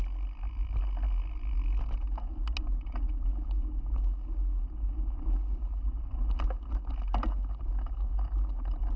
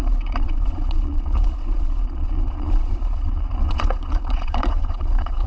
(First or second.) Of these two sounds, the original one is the first